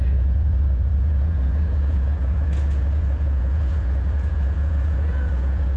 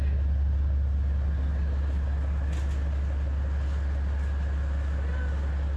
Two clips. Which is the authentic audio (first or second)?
second